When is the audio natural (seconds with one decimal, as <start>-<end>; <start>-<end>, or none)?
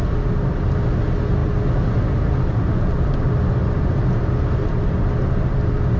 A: 0.0-6.0